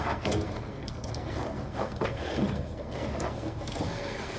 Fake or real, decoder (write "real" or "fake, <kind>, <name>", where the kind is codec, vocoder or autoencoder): fake, codec, SNAC